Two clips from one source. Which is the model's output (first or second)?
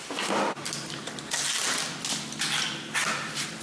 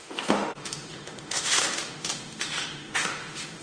second